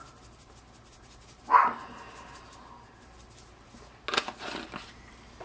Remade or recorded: recorded